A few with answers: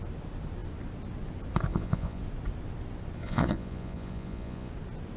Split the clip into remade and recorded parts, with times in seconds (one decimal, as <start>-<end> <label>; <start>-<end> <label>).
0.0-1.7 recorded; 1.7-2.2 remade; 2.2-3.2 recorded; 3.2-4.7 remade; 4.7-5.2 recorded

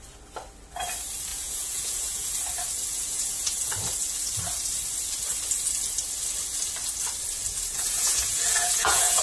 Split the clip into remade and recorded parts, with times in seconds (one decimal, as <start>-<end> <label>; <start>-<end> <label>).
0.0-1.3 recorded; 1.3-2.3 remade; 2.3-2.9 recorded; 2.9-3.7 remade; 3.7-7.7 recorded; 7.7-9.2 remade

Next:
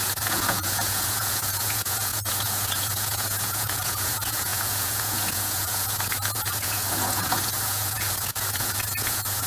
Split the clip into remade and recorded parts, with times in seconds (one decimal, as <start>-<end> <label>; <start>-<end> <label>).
0.0-9.5 remade

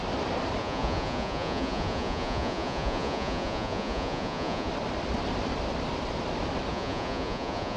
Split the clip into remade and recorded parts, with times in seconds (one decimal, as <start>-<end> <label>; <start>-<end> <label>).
0.0-0.6 recorded; 0.6-4.7 remade; 4.7-6.7 recorded; 6.7-7.8 remade

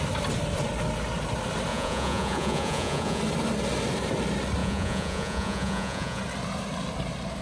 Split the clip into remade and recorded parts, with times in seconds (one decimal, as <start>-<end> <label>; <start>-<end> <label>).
0.0-1.7 recorded; 1.7-3.2 remade; 3.2-4.6 recorded; 4.6-6.2 remade; 6.2-7.4 recorded

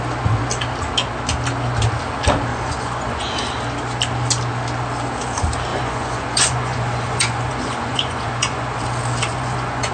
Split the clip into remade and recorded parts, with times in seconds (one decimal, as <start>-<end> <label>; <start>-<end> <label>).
0.0-2.5 recorded; 2.5-3.3 remade; 3.3-5.7 recorded; 5.7-8.8 remade; 8.8-9.3 recorded; 9.3-9.9 remade

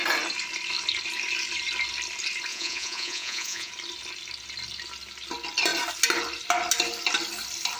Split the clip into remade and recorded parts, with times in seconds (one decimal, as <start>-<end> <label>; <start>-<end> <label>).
0.0-2.5 recorded; 2.5-3.7 remade; 3.7-7.8 recorded